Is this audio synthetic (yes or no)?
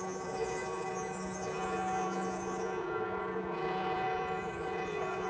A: yes